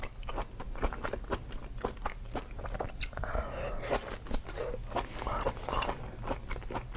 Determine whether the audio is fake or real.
real